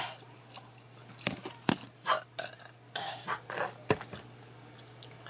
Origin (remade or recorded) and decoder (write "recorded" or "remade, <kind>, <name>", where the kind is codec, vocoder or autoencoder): recorded